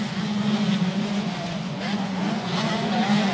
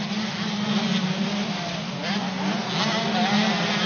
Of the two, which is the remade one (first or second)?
first